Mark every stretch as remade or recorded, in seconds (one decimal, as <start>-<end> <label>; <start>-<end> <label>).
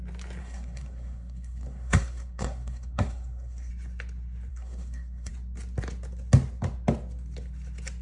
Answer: 0.0-0.4 recorded; 0.4-3.7 remade; 3.7-4.5 recorded; 4.5-5.3 remade; 5.3-8.0 recorded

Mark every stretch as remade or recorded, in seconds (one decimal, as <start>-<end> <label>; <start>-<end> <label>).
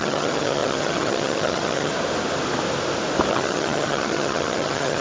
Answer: 0.0-1.9 remade; 1.9-3.3 recorded; 3.3-5.0 remade